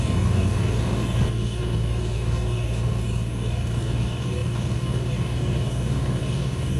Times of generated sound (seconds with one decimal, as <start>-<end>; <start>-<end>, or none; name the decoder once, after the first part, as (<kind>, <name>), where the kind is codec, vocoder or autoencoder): 0.0-6.8 (codec, DAC)